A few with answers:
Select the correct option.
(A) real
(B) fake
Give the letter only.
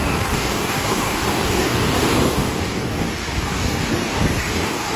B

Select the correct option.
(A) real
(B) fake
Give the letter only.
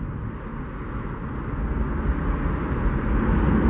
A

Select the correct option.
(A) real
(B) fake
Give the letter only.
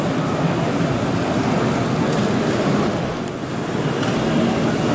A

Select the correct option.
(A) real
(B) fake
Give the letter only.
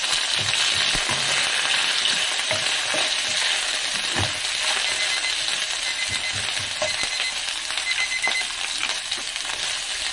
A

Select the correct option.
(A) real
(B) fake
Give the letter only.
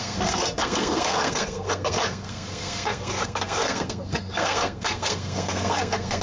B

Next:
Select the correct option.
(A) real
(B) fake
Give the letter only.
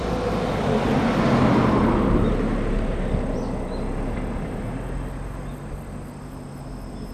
A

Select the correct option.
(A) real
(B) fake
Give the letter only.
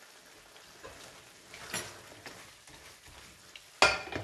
A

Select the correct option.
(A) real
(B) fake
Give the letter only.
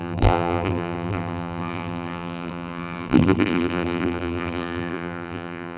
B